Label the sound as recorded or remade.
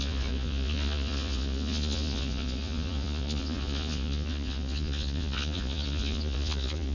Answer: remade